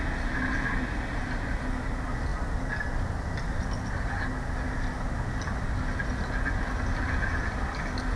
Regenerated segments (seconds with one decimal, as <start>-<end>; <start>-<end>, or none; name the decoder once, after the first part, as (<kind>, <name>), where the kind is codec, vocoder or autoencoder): none